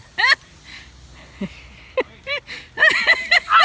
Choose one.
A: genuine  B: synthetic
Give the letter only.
A